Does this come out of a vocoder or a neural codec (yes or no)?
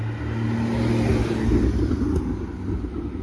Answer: no